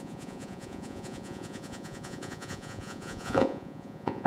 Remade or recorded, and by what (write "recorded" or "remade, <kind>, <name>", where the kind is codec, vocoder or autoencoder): remade, vocoder, Vocos